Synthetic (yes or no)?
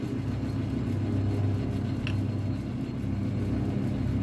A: no